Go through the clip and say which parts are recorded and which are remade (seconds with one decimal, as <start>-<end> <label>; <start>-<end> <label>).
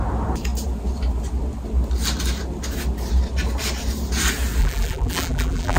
0.0-4.6 recorded; 4.6-5.8 remade